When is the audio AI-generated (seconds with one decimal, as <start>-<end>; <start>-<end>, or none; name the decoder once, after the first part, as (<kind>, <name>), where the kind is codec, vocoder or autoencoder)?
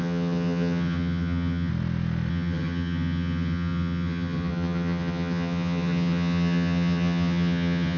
0.0-1.7 (vocoder, HiFi-GAN); 2.3-8.0